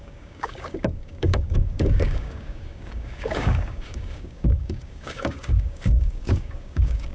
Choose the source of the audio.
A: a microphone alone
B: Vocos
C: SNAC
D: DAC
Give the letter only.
D